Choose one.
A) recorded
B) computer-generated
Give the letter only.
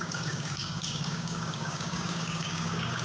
B